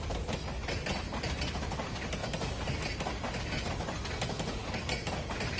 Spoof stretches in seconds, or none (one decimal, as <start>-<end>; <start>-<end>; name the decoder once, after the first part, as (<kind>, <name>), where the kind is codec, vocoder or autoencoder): none